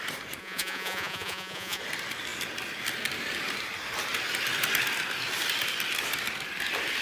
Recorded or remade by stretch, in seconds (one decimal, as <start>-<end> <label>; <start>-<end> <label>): 0.0-0.4 recorded; 0.4-1.8 remade; 1.8-7.0 recorded

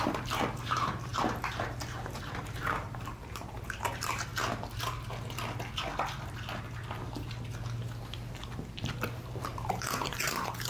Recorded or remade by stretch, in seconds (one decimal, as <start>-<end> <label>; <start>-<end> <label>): 0.0-4.3 remade; 4.3-8.6 recorded; 8.6-10.7 remade